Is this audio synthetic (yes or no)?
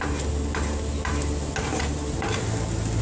no